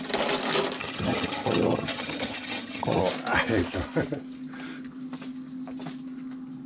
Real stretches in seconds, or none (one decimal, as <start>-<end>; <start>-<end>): 0.0-0.8; 3.0-6.7